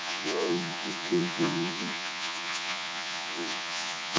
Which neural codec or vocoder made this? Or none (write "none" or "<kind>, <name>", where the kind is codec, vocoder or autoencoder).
vocoder, Vocos